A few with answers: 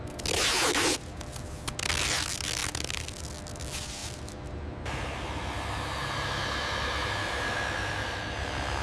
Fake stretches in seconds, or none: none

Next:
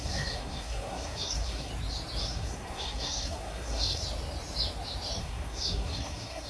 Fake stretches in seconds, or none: 0.0-1.7 (codec, SNAC); 2.2-4.0; 5.2-6.5

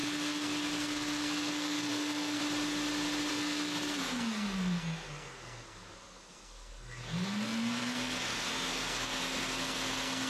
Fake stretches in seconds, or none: 0.0-2.4 (codec, SNAC); 3.3-10.3

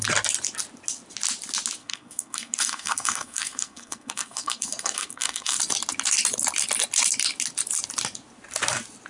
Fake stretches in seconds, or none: 1.8-5.6 (codec, SNAC)

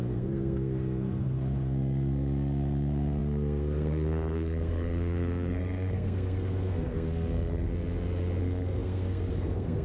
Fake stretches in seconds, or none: 0.0-7.7 (codec, SNAC); 8.4-9.8

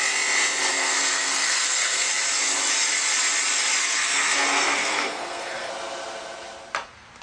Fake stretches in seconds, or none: 0.7-2.1 (codec, SNAC); 3.8-5.7

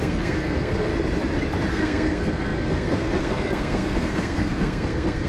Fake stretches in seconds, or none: 0.0-0.9 (codec, SNAC); 1.7-5.3